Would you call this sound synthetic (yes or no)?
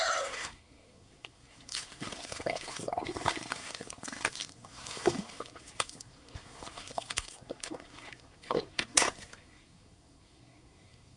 yes